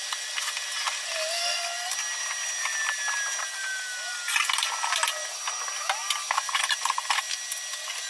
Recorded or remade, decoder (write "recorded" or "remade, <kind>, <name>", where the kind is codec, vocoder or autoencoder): recorded